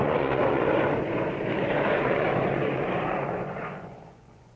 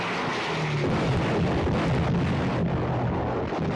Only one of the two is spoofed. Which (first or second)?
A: first